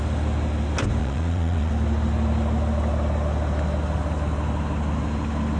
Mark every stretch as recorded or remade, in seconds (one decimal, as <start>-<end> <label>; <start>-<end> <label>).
0.0-1.0 recorded; 1.0-1.7 remade; 1.7-5.6 recorded